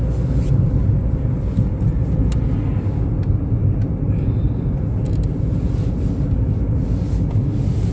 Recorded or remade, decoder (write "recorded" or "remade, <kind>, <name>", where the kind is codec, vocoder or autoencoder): recorded